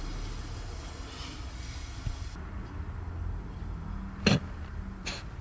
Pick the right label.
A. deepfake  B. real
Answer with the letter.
B